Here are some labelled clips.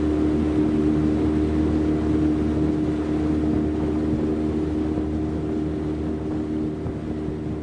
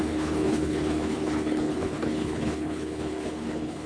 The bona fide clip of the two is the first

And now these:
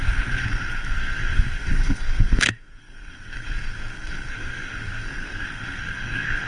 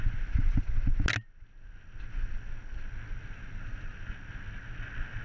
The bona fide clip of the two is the second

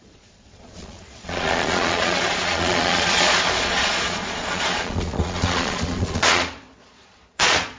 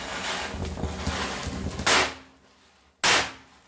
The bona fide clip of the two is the second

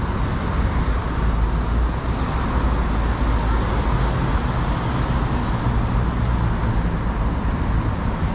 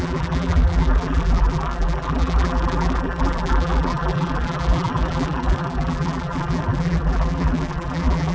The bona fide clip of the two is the first